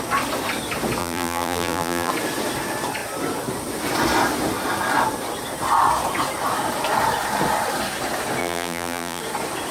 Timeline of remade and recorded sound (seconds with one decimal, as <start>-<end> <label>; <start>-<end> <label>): 0.0-1.0 recorded; 1.0-2.1 remade; 2.1-8.4 recorded; 8.4-9.2 remade; 9.2-9.7 recorded